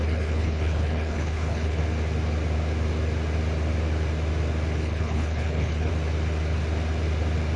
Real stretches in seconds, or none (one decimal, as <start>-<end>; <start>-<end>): 1.8-4.8; 5.9-7.6